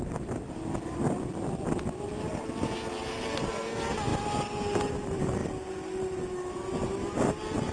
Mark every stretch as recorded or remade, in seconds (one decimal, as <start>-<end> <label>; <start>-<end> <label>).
0.0-7.7 recorded